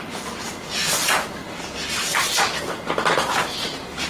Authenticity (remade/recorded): recorded